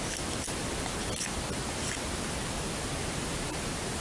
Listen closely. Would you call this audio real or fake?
real